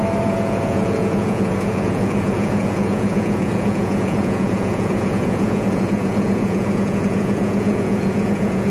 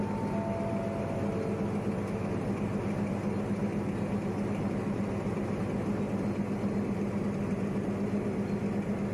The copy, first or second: first